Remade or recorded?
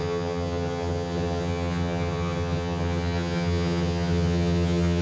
remade